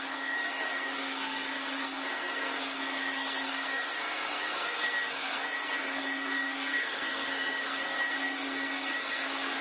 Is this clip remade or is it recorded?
remade